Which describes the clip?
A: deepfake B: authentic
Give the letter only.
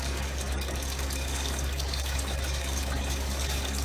A